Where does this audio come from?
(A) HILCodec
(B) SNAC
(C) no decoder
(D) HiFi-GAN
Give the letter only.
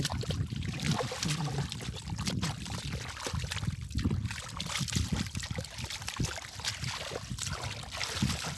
C